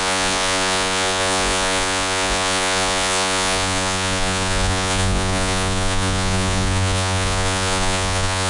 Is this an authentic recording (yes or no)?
no